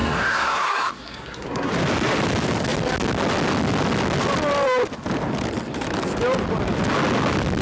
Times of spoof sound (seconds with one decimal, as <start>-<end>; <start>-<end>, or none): 0.0-1.7